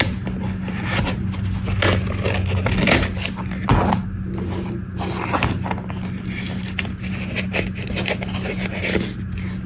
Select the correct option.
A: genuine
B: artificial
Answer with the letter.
A